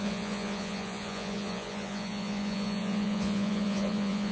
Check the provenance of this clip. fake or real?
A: fake